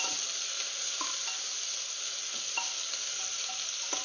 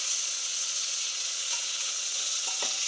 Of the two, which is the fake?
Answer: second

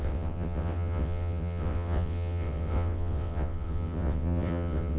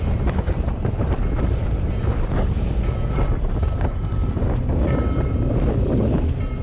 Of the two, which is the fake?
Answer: first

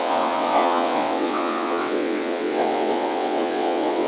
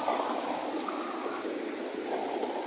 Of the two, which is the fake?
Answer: first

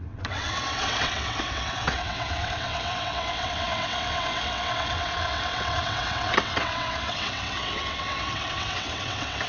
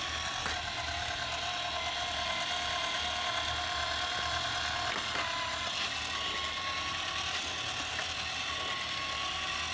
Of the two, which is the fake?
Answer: first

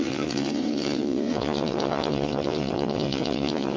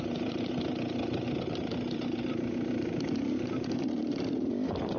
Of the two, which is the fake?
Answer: first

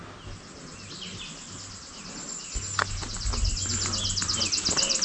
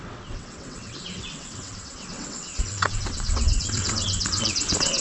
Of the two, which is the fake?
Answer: second